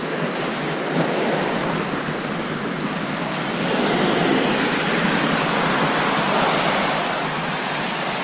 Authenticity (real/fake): real